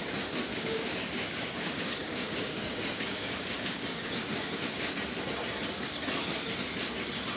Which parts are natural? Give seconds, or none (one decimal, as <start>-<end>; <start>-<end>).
0.0-0.5; 4.9-7.4